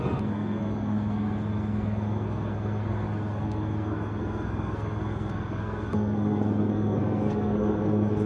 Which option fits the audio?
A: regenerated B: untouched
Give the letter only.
A